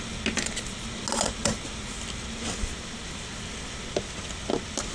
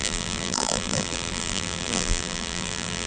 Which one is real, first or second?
first